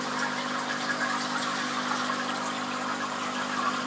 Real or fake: real